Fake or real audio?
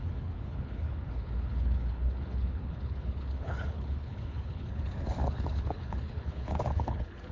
fake